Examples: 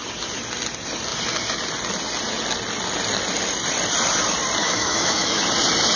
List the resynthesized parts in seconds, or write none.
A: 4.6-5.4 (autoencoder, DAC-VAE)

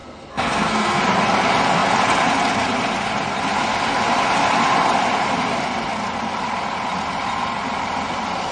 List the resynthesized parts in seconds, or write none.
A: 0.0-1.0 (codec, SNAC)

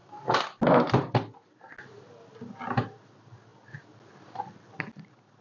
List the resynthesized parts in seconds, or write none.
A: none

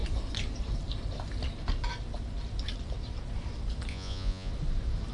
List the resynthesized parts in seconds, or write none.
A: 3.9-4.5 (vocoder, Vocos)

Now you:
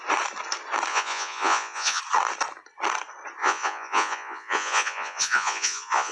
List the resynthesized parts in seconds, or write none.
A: 0.9-2.0 (vocoder, Vocos); 3.4-6.1